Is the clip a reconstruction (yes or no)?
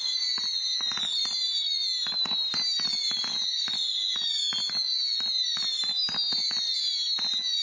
no